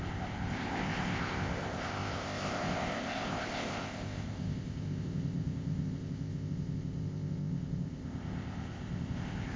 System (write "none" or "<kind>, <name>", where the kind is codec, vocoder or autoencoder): codec, ZipCodec